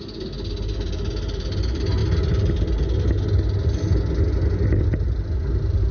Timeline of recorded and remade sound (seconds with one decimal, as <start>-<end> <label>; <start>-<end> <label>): 0.0-5.9 recorded